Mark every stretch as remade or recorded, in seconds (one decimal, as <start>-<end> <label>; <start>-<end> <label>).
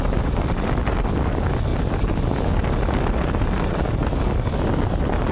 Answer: 0.0-1.7 recorded; 1.7-4.5 remade; 4.5-5.3 recorded